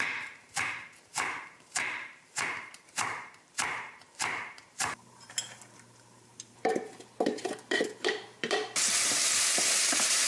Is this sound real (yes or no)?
no